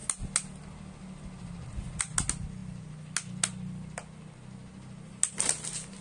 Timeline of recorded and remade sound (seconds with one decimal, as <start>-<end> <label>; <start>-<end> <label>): 0.0-6.0 recorded